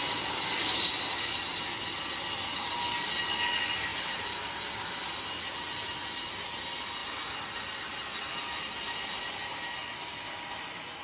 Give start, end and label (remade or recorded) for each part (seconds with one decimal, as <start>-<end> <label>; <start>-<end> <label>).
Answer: 0.0-11.0 recorded